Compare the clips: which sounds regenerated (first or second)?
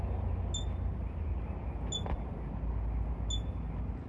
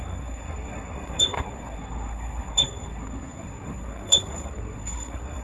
second